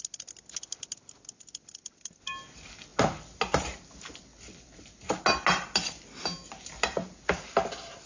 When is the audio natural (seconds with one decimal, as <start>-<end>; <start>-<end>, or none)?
0.0-8.1